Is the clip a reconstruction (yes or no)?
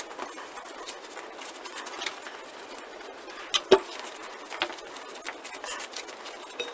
no